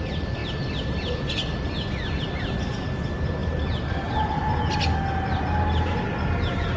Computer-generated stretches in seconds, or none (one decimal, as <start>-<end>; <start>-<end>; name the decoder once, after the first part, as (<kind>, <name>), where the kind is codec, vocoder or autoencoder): none